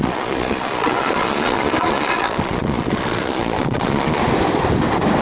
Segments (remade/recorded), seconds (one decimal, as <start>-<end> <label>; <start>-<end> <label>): 0.0-4.2 remade; 4.2-5.2 recorded